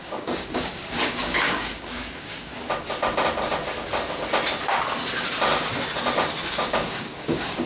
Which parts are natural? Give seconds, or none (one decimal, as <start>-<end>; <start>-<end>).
2.5-6.5

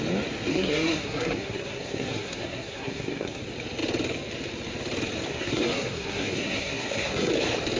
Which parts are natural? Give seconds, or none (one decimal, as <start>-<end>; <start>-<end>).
0.0-0.5; 3.4-5.3; 7.3-7.8

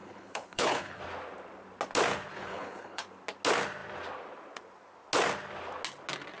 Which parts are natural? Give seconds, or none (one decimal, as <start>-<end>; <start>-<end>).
1.0-2.3; 3.0-6.4

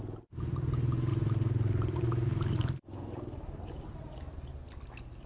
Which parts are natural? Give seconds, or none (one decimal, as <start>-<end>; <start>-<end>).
0.0-1.1; 4.1-5.3

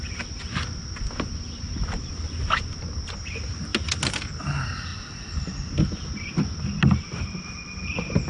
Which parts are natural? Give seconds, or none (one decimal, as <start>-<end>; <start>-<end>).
0.0-8.3